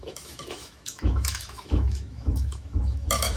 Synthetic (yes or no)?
yes